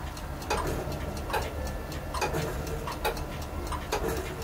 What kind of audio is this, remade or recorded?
recorded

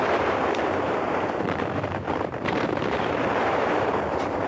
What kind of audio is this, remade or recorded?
remade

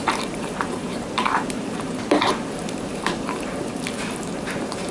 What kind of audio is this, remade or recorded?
remade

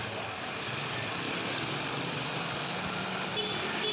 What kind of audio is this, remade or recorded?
recorded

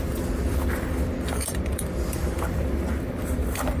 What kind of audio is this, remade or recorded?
remade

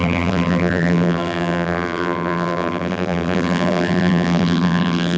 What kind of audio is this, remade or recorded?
remade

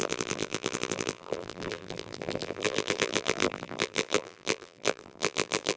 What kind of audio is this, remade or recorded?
remade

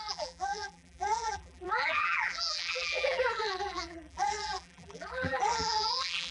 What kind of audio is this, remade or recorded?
remade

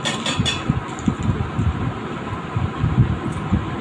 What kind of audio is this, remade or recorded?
recorded